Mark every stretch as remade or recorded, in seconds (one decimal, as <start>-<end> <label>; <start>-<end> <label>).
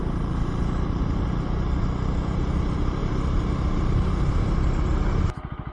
0.0-3.0 recorded; 3.0-4.4 remade; 4.4-5.7 recorded